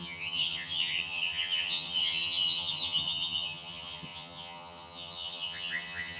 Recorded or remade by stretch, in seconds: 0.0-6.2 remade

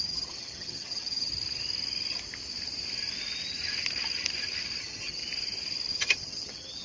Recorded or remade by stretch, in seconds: 0.0-1.3 remade; 1.3-4.8 recorded; 4.8-5.2 remade; 5.2-5.9 recorded; 5.9-6.8 remade

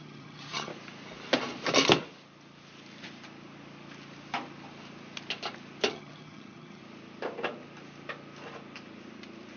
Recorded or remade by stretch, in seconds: 0.0-0.7 remade; 0.7-5.9 recorded; 5.9-6.8 remade; 6.8-9.6 recorded

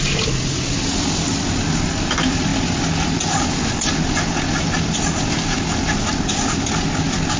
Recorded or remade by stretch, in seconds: 0.0-7.4 recorded